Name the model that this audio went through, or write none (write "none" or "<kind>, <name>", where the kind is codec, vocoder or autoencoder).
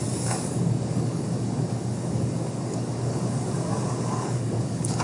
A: codec, DAC